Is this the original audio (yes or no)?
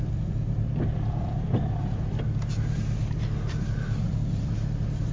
no